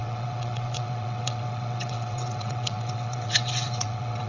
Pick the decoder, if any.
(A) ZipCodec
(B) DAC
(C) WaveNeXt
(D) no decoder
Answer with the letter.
C